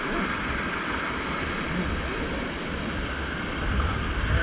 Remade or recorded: recorded